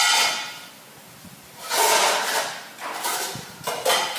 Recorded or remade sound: recorded